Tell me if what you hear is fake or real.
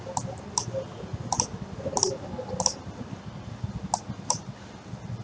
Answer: real